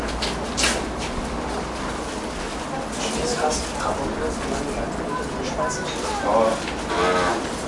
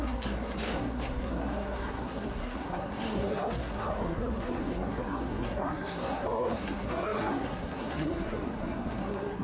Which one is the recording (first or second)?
first